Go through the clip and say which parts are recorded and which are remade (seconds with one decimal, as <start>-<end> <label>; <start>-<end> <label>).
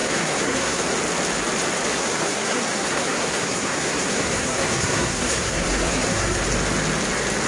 0.0-0.8 remade; 0.8-1.9 recorded; 1.9-6.4 remade; 6.4-7.5 recorded